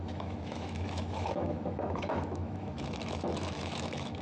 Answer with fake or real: fake